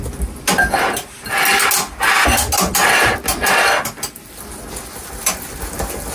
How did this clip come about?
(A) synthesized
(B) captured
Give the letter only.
B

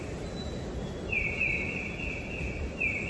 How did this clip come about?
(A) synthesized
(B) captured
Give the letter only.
B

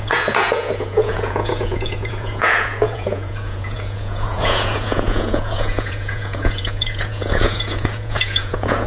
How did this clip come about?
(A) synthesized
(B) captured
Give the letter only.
A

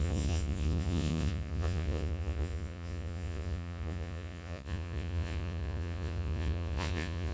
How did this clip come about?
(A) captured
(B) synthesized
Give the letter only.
B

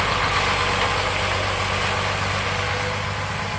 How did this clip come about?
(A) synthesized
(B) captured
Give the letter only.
B